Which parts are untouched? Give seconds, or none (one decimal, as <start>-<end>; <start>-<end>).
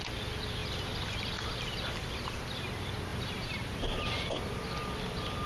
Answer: 0.0-5.5